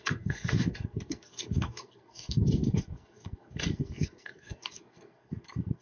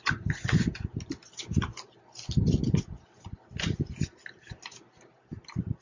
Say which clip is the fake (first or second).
first